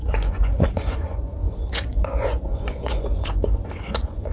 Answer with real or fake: fake